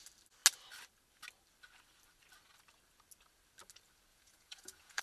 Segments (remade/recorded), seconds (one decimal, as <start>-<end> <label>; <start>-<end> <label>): 0.0-4.1 recorded; 4.1-5.0 remade